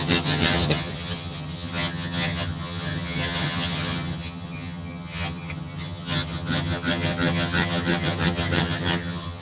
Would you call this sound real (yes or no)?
no